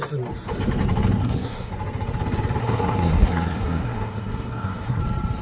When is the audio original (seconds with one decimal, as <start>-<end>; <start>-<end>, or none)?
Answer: 0.0-1.2; 1.7-2.6; 5.0-5.4